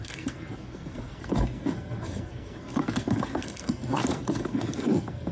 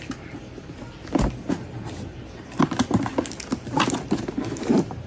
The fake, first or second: first